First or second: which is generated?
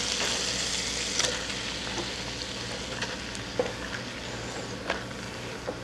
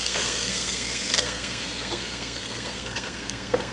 second